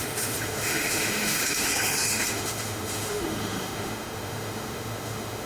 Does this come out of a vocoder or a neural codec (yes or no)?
yes